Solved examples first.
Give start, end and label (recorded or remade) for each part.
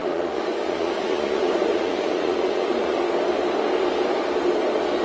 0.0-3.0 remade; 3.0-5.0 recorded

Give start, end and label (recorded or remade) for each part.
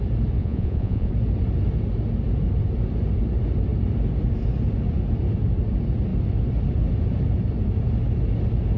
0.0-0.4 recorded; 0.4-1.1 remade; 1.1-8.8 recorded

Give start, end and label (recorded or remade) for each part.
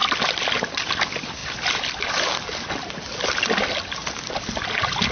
0.0-5.1 recorded